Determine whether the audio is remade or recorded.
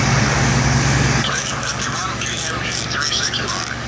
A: remade